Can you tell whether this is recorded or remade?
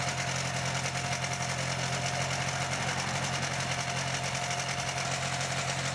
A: recorded